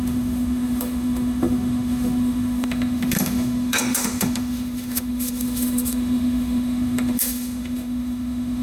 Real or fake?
fake